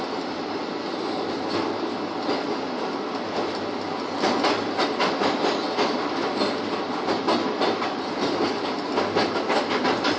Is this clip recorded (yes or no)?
yes